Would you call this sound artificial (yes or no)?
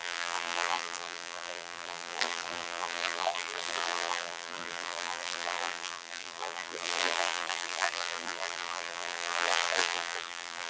yes